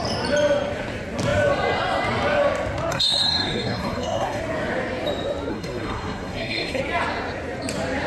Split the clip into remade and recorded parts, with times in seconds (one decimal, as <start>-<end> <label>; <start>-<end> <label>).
0.0-2.9 recorded; 2.9-4.4 remade; 4.4-5.5 recorded; 5.5-6.8 remade; 6.8-8.1 recorded